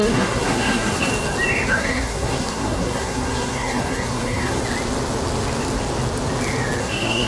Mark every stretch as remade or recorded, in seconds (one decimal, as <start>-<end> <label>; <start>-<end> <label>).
0.0-1.1 remade; 1.1-1.7 recorded; 1.7-4.6 remade; 4.6-6.8 recorded; 6.8-7.3 remade